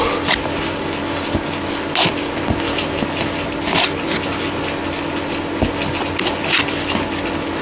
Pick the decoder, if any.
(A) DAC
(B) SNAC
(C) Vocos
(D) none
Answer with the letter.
D